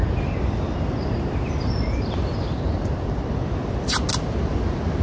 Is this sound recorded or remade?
recorded